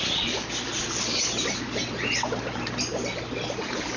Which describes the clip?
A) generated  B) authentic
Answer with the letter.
B